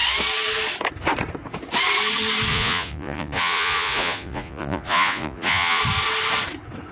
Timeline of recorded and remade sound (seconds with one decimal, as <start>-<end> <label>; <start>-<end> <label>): 0.0-2.5 recorded; 2.5-5.8 remade; 5.8-6.9 recorded